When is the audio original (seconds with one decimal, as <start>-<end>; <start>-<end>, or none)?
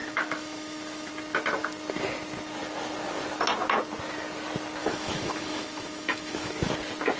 1.1-4.8; 6.7-7.2